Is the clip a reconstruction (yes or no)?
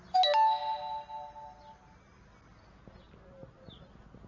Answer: no